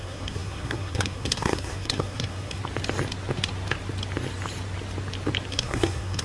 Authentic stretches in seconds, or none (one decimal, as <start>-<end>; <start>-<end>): 2.6-5.5